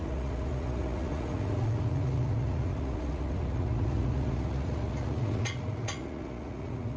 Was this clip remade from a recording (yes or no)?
yes